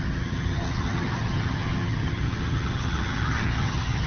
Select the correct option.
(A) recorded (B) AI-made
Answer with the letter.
B